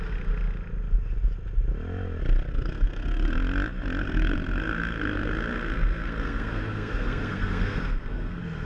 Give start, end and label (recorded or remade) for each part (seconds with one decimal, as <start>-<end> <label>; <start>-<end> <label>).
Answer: 0.0-2.5 recorded; 2.5-3.3 remade; 3.3-4.0 recorded; 4.0-8.7 remade